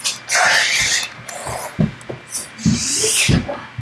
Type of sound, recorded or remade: recorded